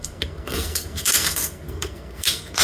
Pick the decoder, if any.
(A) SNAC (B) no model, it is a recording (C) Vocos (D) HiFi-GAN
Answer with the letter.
A